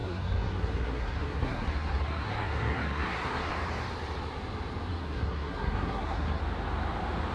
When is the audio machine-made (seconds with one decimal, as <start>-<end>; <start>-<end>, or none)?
0.0-3.5; 4.9-6.4